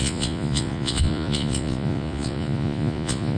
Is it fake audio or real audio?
fake